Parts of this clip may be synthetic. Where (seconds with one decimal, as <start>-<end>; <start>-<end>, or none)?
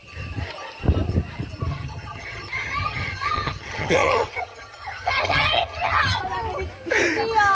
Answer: 1.7-6.2